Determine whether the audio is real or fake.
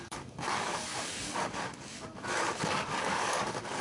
fake